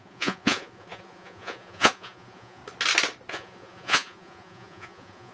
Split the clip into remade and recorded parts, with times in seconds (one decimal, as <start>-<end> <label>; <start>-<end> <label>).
0.0-2.6 remade; 2.6-3.3 recorded; 3.3-5.3 remade